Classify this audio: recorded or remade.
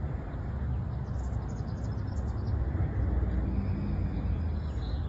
recorded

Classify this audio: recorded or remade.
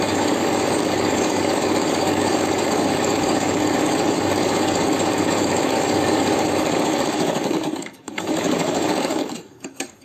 remade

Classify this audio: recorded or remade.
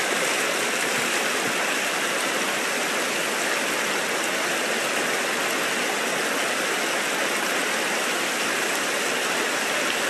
recorded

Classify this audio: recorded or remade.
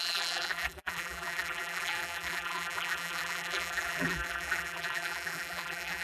remade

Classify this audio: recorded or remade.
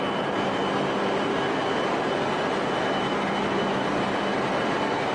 recorded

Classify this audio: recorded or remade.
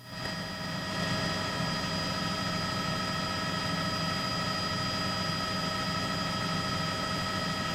recorded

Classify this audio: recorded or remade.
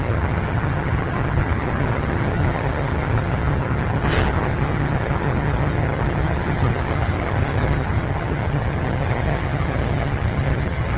remade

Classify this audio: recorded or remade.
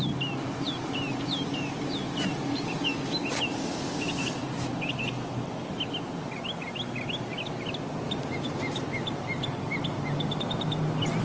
recorded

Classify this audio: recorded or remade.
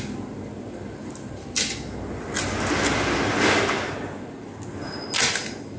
recorded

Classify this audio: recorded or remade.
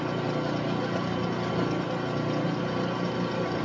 recorded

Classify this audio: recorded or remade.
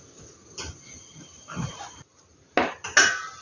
recorded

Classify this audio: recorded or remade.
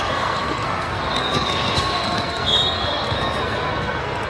remade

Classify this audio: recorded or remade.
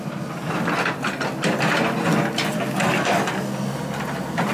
recorded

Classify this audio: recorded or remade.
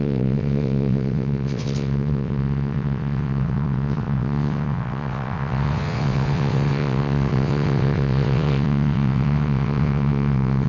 remade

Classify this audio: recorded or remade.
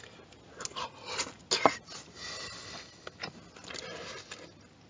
recorded